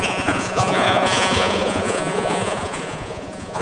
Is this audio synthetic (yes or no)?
yes